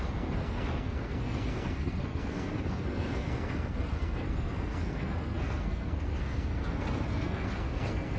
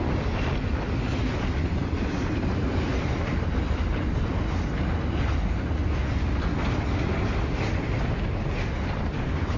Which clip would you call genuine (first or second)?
second